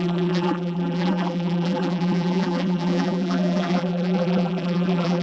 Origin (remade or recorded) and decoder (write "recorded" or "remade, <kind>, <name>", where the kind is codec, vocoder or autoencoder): remade, vocoder, BigVGAN v2